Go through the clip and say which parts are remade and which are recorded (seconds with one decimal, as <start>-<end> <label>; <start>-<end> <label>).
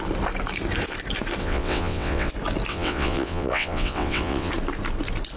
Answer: 0.0-1.4 recorded; 1.4-2.3 remade; 2.3-2.7 recorded; 2.7-4.5 remade; 4.5-5.4 recorded